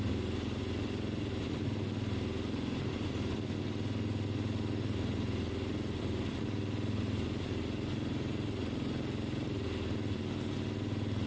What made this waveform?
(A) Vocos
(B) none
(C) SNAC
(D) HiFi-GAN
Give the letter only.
B